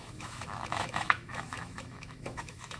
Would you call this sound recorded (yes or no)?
no